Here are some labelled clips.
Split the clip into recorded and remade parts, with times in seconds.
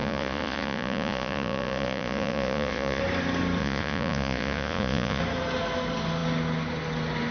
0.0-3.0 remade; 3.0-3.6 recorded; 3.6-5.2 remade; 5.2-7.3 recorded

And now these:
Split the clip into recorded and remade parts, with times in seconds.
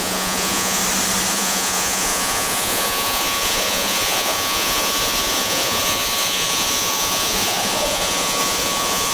0.0-0.8 remade; 0.8-1.3 recorded; 1.3-9.1 remade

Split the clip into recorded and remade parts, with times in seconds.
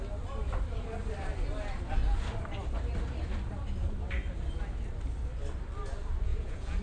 0.0-6.3 recorded; 6.3-6.8 remade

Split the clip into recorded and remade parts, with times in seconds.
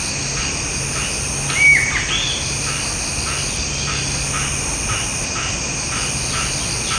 0.0-7.0 recorded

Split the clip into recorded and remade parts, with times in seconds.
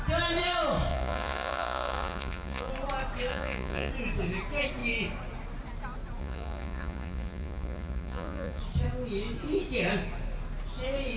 0.0-0.9 recorded; 0.9-2.7 remade; 2.7-3.3 recorded; 3.3-3.9 remade; 3.9-6.2 recorded; 6.2-8.6 remade; 8.6-11.2 recorded